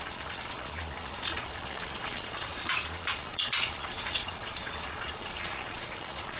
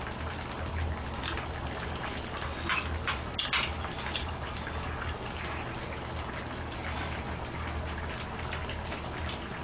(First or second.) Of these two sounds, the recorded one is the second